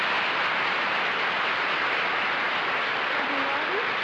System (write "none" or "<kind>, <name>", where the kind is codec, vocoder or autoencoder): none